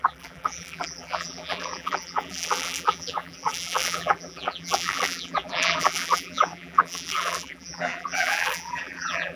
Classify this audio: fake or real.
fake